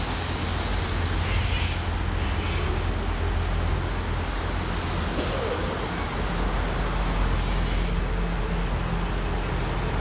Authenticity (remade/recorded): recorded